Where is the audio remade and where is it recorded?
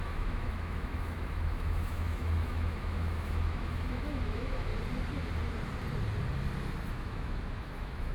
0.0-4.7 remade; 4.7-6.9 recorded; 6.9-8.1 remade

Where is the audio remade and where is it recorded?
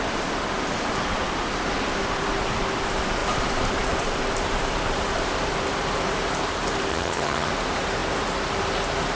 0.0-6.9 recorded; 6.9-7.5 remade; 7.5-9.2 recorded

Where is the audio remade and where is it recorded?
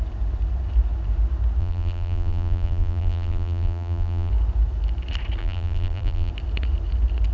0.0-1.6 recorded; 1.6-4.3 remade; 4.3-5.4 recorded; 5.4-6.3 remade; 6.3-7.3 recorded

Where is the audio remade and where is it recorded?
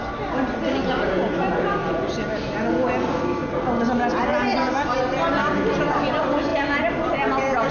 0.0-7.7 recorded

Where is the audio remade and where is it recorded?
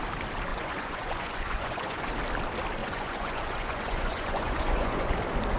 0.0-0.5 recorded; 0.5-2.1 remade; 2.1-2.8 recorded; 2.8-5.1 remade; 5.1-5.6 recorded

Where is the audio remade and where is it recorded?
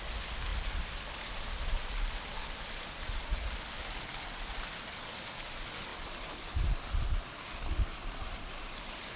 0.0-9.2 recorded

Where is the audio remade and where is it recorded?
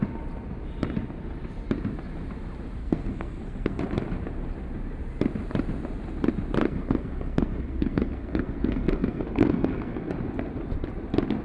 0.0-2.8 recorded; 2.8-3.8 remade; 3.8-6.6 recorded; 6.6-10.1 remade; 10.1-11.4 recorded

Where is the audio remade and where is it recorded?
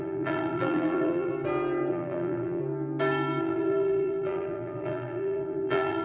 0.0-1.3 remade; 1.3-1.9 recorded; 1.9-2.6 remade; 2.6-3.4 recorded; 3.4-6.0 remade